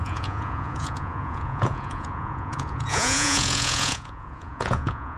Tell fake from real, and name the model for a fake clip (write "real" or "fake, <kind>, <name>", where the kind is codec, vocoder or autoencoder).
fake, vocoder, Vocos